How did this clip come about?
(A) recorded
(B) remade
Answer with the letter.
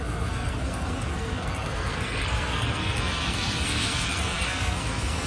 B